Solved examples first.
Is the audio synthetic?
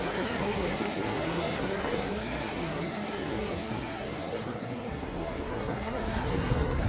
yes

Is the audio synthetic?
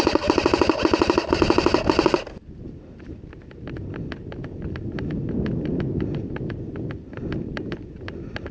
no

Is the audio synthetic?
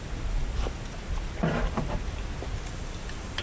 no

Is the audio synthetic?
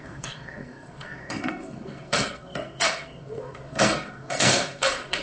yes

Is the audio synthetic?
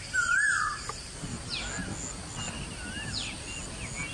no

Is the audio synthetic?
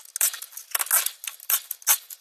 no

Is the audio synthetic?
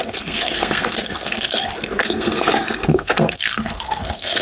yes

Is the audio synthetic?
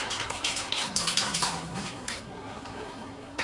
yes